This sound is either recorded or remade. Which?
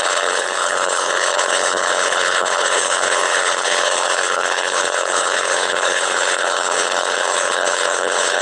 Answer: remade